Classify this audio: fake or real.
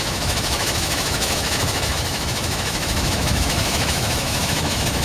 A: fake